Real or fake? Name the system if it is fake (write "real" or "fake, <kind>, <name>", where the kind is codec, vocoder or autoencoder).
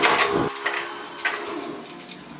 real